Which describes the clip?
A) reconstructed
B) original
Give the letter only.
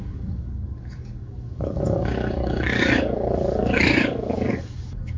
A